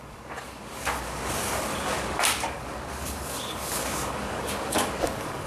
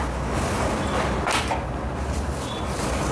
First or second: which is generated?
first